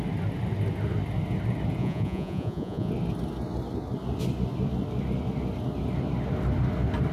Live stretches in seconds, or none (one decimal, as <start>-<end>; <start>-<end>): 0.0-1.8; 2.9-7.1

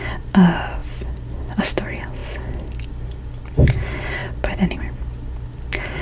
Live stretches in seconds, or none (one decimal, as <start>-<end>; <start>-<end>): 0.0-6.0

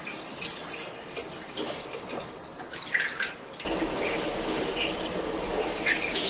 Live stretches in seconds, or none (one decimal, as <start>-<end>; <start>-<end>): 0.0-6.3

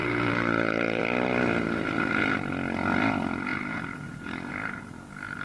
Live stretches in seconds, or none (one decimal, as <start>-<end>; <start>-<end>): 1.0-3.5; 4.5-5.4